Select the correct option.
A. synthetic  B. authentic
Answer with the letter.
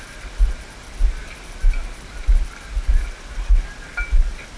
B